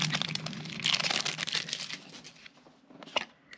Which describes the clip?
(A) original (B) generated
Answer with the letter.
A